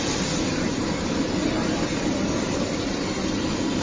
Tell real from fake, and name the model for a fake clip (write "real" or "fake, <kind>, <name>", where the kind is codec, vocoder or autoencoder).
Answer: real